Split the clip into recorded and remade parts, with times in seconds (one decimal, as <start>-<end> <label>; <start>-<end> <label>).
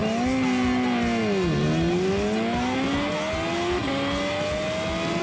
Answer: 0.0-5.2 recorded